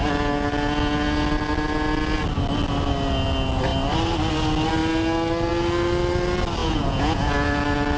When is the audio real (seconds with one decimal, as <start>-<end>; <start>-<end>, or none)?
0.0-6.6; 7.3-8.0